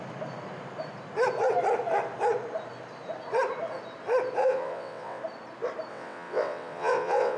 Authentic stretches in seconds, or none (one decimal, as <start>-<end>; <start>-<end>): 0.0-4.4; 5.2-5.9